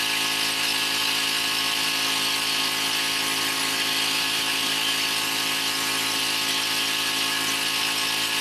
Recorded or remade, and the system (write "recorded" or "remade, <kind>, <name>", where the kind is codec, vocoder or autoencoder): recorded